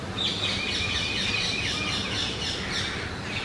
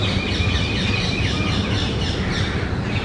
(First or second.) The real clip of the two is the first